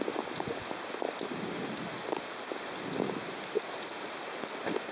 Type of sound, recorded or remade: recorded